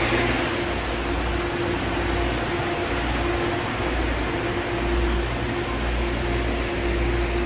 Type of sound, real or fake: real